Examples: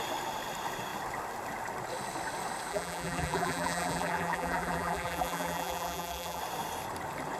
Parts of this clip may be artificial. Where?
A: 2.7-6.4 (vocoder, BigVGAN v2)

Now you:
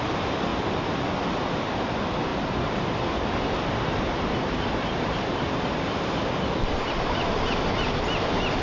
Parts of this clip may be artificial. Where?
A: 0.5-1.0 (vocoder, BigVGAN v2); 2.3-6.9

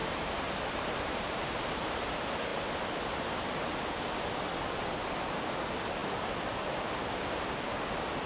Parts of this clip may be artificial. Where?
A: 0.0-2.1 (vocoder, BigVGAN v2)

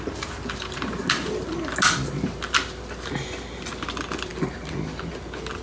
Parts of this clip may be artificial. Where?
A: none

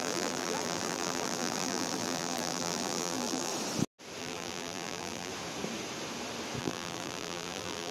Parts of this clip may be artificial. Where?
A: 0.0-3.5 (vocoder, BigVGAN v2); 4.2-5.3; 6.6-7.9

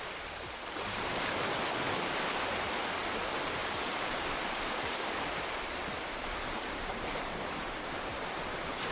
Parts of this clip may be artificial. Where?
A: 3.6-7.7 (vocoder, BigVGAN v2)